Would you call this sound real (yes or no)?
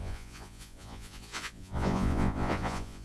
no